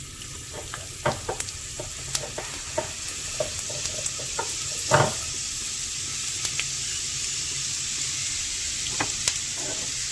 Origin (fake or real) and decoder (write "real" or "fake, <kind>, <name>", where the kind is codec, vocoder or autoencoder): real